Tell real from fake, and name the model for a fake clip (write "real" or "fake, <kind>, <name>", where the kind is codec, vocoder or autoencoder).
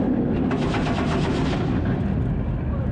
real